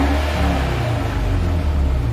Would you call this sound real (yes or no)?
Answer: yes